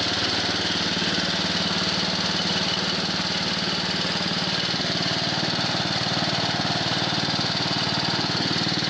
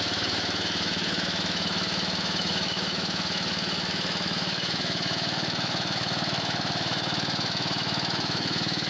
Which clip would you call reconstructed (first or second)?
second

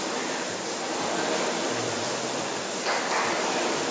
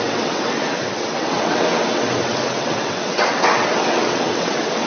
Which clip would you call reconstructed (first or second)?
second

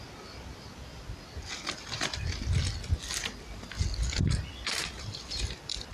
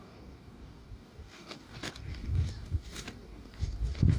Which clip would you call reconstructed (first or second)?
second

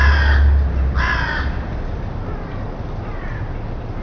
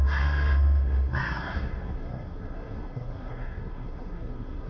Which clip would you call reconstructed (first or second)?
second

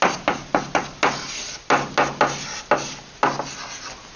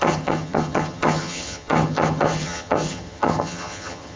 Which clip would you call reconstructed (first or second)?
second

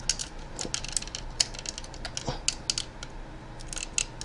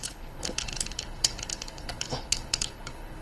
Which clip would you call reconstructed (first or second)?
second